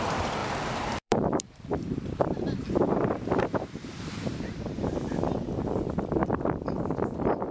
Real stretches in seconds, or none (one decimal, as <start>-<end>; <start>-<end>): 0.0-0.4; 4.9-6.2; 6.8-7.5